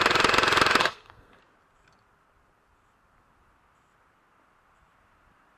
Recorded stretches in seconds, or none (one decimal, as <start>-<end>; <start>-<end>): 0.0-0.8; 1.4-5.6